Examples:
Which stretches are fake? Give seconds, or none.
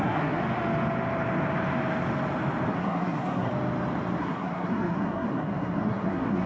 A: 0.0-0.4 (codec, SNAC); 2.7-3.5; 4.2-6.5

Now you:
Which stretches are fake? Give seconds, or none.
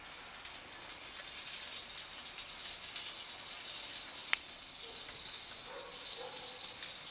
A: none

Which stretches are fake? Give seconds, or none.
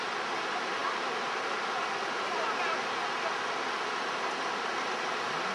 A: none